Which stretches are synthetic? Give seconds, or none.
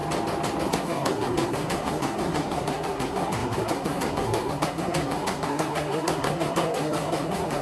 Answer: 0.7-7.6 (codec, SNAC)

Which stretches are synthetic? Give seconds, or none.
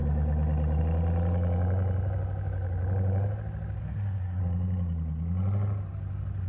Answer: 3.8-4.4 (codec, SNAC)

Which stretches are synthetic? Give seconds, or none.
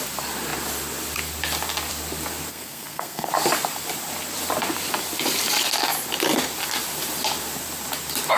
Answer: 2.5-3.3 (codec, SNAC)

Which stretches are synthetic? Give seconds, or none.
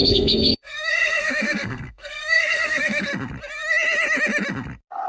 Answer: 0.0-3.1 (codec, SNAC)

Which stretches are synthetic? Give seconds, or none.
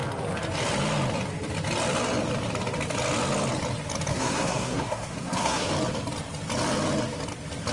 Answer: 4.1-5.7 (codec, SNAC)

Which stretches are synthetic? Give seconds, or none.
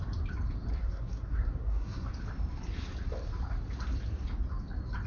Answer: 0.7-2.1 (codec, SNAC)